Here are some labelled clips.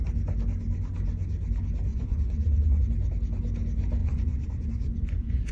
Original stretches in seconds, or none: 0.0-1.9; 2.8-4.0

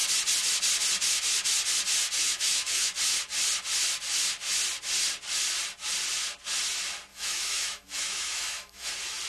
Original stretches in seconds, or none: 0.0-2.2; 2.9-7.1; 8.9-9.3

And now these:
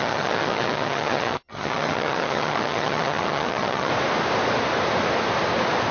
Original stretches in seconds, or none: 3.9-5.9

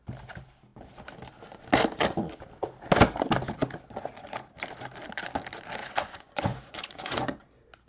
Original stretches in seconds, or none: 0.0-5.8; 7.4-7.9

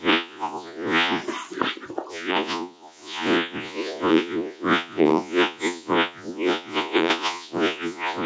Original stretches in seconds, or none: 1.2-2.1

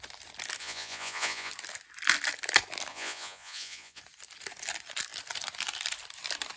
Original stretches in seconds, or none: 0.0-0.6; 1.5-2.9; 4.0-6.6

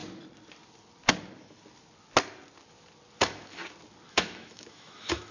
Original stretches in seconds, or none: 0.0-3.2; 3.6-4.1

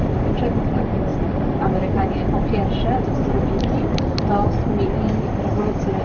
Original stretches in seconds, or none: none